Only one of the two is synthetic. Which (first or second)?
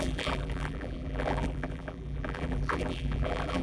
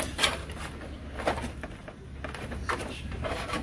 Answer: first